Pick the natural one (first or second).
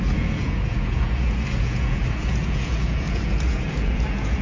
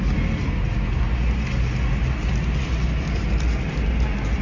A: second